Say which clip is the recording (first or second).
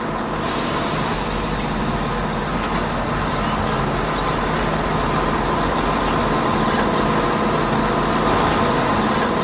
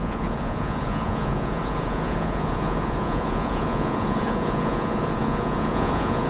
first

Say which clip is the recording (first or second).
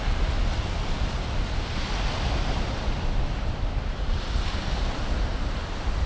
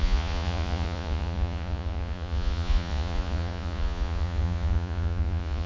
first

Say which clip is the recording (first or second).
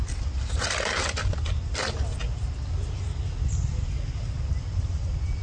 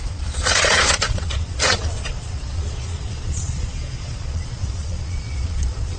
first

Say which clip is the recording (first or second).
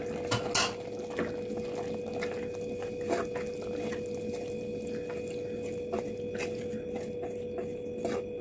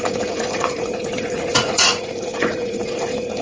first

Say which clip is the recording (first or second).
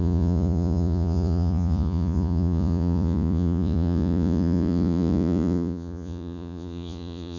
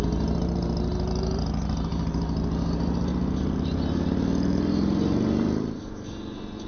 second